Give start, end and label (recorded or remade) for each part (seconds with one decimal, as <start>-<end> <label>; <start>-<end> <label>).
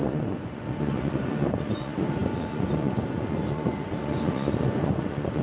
0.0-5.4 remade